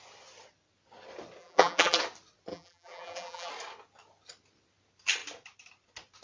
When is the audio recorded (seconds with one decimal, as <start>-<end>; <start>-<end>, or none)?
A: 0.0-1.4; 2.0-2.5; 3.5-6.2